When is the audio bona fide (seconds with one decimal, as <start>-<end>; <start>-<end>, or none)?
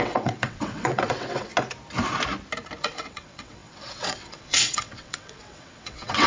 1.5-2.8